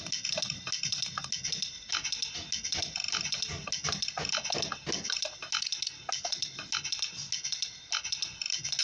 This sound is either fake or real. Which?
real